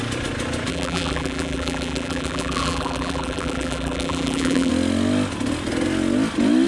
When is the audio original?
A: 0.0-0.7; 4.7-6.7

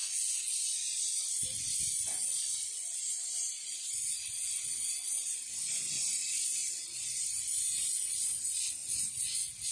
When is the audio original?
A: 0.0-6.6; 7.2-9.7

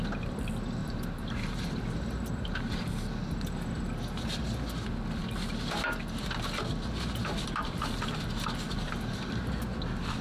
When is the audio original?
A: 0.0-0.8; 3.2-7.2; 9.6-10.2

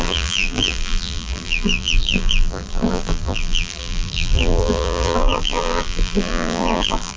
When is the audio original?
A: none